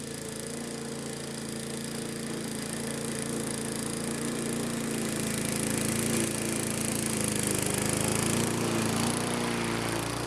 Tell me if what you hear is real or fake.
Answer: real